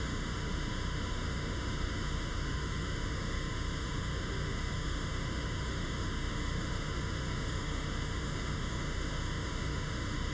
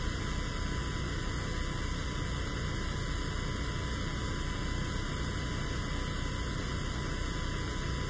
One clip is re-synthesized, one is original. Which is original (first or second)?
second